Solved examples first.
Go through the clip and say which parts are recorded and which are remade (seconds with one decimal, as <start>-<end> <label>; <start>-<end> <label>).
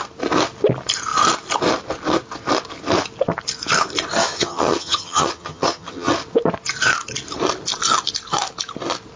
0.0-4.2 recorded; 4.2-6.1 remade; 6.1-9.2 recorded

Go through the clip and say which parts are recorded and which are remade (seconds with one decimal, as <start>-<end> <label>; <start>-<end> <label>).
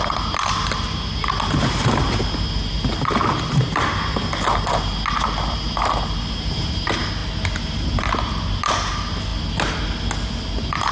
0.0-10.9 recorded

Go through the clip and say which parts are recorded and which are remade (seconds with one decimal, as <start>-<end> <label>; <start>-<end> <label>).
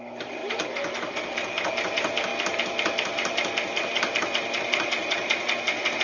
0.0-6.0 recorded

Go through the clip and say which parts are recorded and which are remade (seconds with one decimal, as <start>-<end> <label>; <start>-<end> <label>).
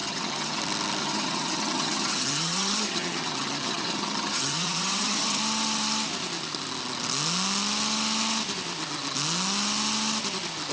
0.0-0.6 remade; 0.6-1.0 recorded; 1.0-5.4 remade; 5.4-10.7 recorded